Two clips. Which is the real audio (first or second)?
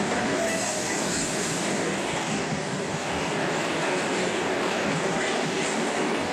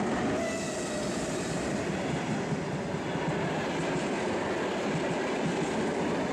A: second